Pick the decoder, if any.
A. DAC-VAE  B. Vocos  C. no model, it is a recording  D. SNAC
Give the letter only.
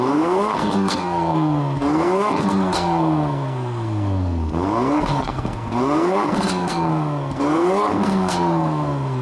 D